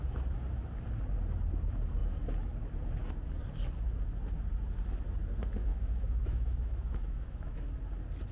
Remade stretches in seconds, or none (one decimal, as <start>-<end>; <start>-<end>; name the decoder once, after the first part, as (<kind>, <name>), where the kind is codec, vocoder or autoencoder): 5.7-7.7 (autoencoder, DAC-VAE)